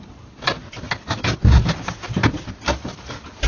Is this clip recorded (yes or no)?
yes